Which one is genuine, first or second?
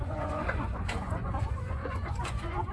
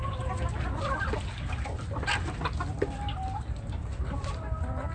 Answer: second